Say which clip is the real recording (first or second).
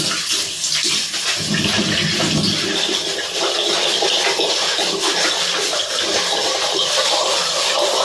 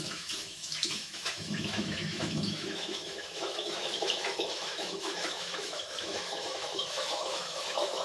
first